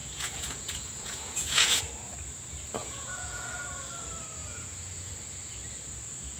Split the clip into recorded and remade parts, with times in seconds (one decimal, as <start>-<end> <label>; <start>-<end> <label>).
0.0-1.8 remade; 1.8-2.8 recorded; 2.8-3.5 remade; 3.5-4.4 recorded; 4.4-5.1 remade; 5.1-6.4 recorded